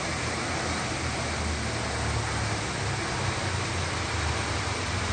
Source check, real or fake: real